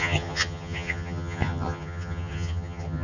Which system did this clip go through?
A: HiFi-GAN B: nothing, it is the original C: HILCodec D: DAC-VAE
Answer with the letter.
A